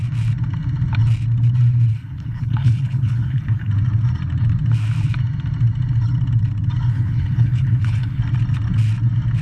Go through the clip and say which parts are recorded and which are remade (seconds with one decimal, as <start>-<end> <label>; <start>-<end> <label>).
0.0-1.9 recorded; 1.9-3.7 remade; 3.7-6.9 recorded; 6.9-8.2 remade; 8.2-9.4 recorded